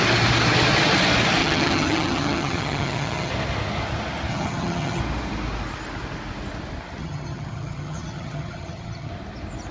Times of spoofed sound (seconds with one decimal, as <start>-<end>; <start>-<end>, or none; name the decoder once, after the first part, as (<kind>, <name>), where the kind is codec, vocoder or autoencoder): 1.4-3.3 (vocoder, HiFi-GAN); 4.3-5.0; 7.0-9.1